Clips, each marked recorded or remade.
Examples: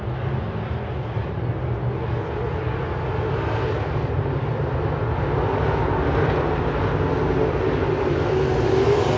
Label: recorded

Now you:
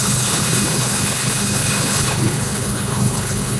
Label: remade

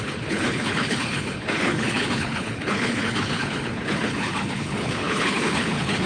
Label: remade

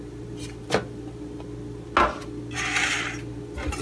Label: recorded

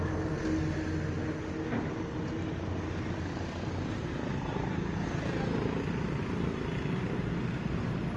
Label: recorded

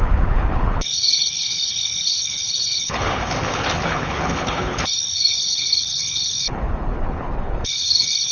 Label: remade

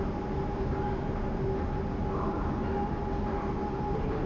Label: recorded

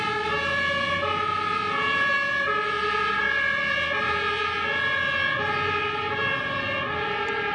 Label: recorded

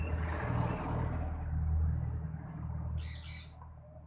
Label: recorded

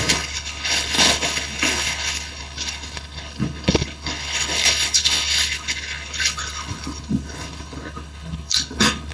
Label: remade